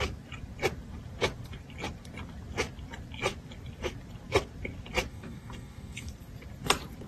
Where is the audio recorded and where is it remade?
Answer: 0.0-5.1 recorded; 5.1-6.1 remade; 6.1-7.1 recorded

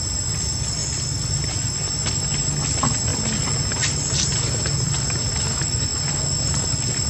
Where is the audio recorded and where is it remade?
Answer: 0.0-7.1 recorded

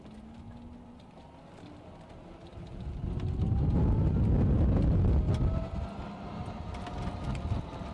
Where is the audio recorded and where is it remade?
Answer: 0.0-7.9 recorded

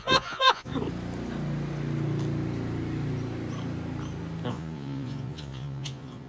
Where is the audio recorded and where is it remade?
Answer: 0.0-0.7 remade; 0.7-4.5 recorded; 4.5-6.3 remade

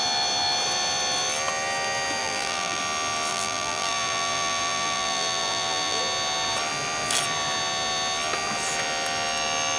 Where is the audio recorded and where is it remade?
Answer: 0.0-2.2 recorded; 2.2-2.8 remade; 2.8-3.3 recorded; 3.3-6.0 remade; 6.0-9.8 recorded

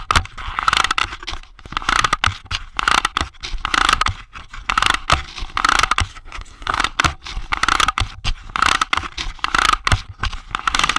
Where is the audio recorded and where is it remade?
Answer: 0.0-6.1 recorded; 6.1-6.8 remade; 6.8-11.0 recorded